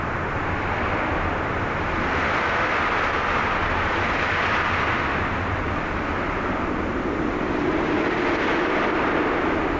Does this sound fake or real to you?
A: real